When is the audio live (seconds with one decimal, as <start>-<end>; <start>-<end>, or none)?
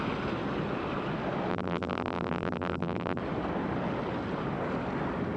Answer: 0.0-1.5; 3.2-5.4